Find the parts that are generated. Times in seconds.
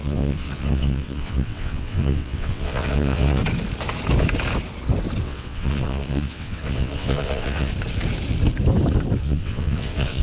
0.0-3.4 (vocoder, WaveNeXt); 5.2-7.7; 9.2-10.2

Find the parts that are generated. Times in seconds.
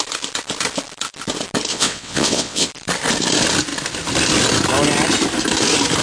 1.7-2.7 (vocoder, WaveNeXt)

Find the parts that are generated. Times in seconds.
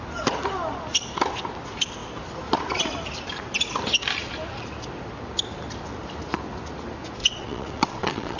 7.2-8.4 (vocoder, WaveNeXt)